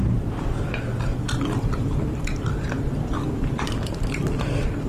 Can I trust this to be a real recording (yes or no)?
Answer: yes